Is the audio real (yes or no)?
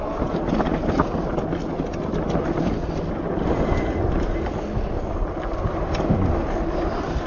yes